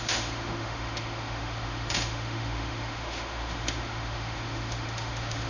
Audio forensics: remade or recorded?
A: remade